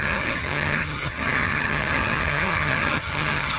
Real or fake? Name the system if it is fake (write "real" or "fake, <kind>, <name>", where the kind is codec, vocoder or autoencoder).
fake, vocoder, HiFi-GAN